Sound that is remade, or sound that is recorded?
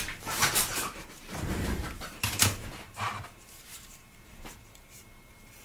remade